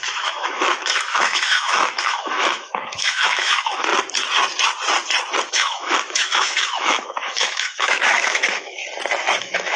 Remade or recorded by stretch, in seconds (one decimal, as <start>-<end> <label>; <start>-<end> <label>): 0.0-3.9 remade; 3.9-5.5 recorded; 5.5-8.8 remade; 8.8-9.4 recorded; 9.4-9.8 remade